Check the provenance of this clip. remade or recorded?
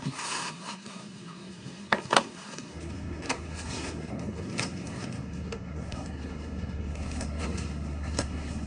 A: remade